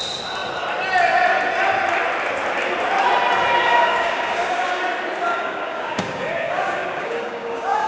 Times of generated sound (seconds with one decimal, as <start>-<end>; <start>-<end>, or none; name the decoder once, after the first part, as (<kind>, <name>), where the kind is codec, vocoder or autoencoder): 3.6-4.8 (codec, DAC); 5.3-7.9